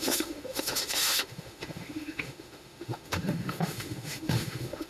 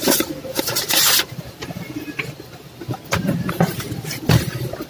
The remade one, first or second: first